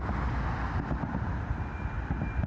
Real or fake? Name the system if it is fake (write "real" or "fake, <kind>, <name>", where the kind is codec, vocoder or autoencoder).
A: real